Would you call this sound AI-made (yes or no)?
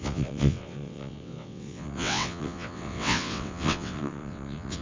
yes